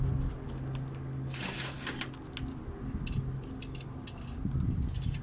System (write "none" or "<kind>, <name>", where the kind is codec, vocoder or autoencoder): none